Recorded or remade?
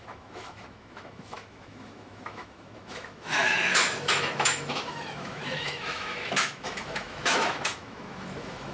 remade